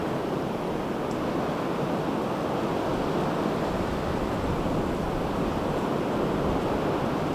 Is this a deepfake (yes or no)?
no